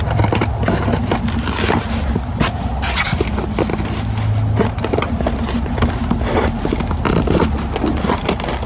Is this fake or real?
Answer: real